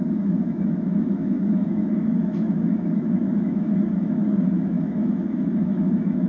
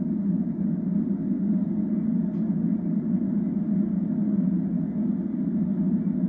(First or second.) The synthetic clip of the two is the first